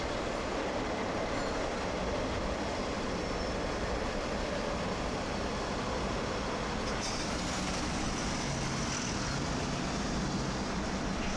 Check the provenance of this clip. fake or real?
real